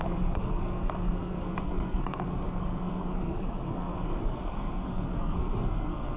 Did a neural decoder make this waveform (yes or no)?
yes